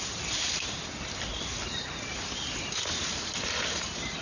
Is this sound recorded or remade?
recorded